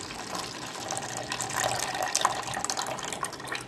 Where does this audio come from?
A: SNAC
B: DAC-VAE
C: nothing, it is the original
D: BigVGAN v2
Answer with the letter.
C